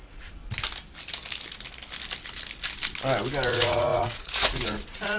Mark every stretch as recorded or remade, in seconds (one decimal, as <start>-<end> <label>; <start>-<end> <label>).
0.0-0.4 remade; 0.4-3.5 recorded; 3.5-5.2 remade

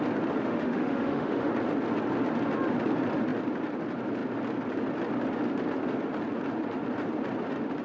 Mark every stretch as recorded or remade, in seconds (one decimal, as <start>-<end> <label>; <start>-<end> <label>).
0.0-0.4 recorded; 0.4-1.5 remade; 1.5-7.8 recorded

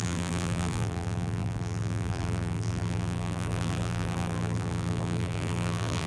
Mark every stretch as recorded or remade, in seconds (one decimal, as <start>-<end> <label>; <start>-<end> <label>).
0.0-6.1 remade

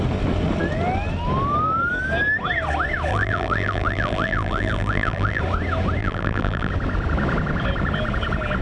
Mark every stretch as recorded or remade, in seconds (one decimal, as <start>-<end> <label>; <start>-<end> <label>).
0.0-3.1 recorded; 3.1-5.4 remade; 5.4-6.0 recorded; 6.0-6.7 remade; 6.7-8.6 recorded